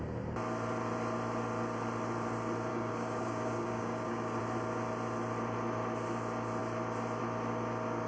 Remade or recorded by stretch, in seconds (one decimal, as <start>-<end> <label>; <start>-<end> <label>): 0.0-2.7 recorded; 2.7-4.4 remade; 4.4-8.1 recorded